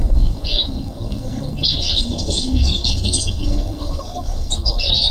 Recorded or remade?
remade